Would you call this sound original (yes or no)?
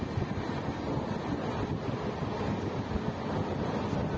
yes